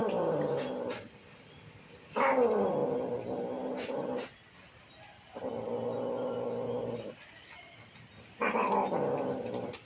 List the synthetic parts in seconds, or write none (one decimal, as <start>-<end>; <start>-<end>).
none